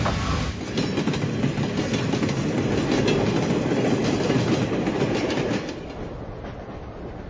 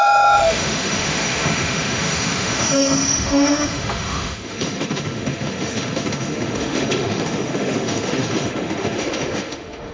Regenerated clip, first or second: second